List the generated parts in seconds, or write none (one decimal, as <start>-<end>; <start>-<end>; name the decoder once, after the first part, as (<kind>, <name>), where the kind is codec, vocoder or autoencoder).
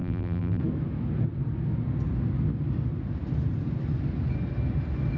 0.0-0.6 (vocoder, BigVGAN v2)